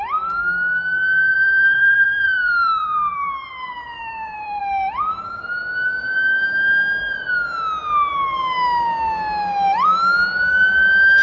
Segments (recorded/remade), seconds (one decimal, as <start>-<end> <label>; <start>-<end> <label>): 0.0-1.3 recorded; 1.3-4.6 remade; 4.6-11.2 recorded